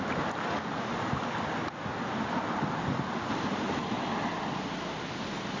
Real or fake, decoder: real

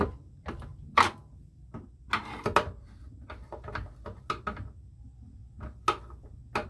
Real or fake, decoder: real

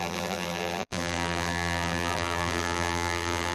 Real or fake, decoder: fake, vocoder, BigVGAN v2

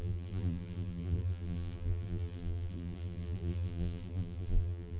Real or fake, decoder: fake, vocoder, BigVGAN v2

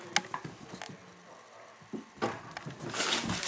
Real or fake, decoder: real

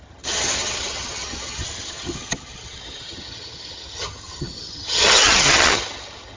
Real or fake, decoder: fake, vocoder, HiFi-GAN